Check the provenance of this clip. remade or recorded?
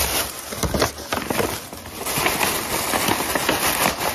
recorded